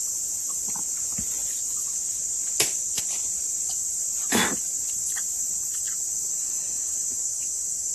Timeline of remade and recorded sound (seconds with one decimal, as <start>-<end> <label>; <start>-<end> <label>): 0.0-7.9 recorded

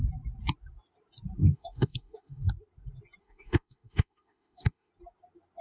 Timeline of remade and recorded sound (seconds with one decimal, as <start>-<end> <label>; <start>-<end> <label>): 0.0-1.4 recorded; 1.4-2.5 remade; 2.5-3.2 recorded; 3.2-4.9 remade; 4.9-5.6 recorded